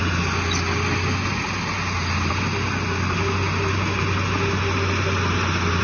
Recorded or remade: recorded